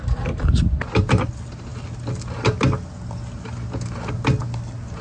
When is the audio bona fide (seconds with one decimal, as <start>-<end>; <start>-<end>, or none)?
0.0-5.0